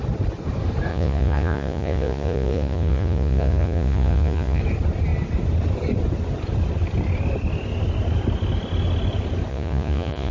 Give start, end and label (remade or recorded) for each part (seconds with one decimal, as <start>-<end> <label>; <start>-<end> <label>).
0.0-0.9 recorded; 0.9-4.6 remade; 4.6-9.5 recorded; 9.5-10.3 remade